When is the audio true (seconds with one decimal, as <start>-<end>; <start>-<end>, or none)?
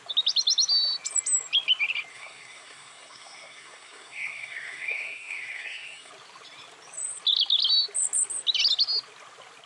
0.0-2.1; 6.1-9.7